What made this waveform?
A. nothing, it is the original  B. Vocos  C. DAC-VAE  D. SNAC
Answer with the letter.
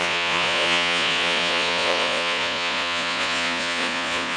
B